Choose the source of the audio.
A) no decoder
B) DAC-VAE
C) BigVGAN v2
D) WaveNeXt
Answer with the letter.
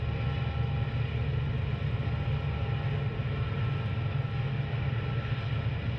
A